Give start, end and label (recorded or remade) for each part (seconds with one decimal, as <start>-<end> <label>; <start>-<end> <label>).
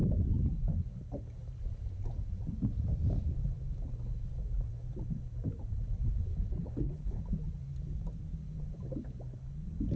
0.0-6.3 recorded; 6.3-7.2 remade; 7.2-10.0 recorded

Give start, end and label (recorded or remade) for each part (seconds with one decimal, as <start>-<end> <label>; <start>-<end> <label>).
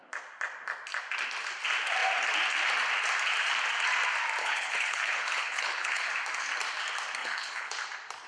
0.0-4.4 recorded; 4.4-6.1 remade; 6.1-7.2 recorded; 7.2-7.7 remade; 7.7-8.3 recorded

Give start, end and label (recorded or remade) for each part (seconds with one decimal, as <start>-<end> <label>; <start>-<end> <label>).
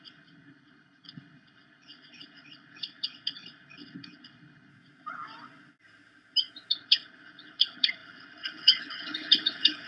0.0-4.7 remade; 4.7-6.7 recorded; 6.7-9.9 remade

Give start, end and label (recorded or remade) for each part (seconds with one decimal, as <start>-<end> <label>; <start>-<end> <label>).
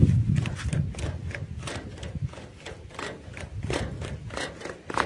0.0-5.1 recorded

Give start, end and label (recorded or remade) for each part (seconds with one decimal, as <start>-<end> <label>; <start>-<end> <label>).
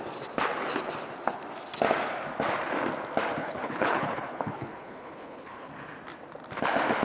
0.0-3.4 recorded; 3.4-5.7 remade; 5.7-7.0 recorded